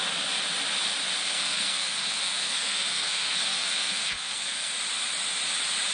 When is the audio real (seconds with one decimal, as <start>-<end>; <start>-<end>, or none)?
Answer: 0.0-1.2; 4.7-5.9